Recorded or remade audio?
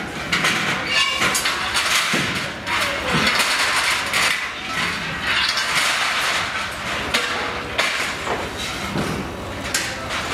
recorded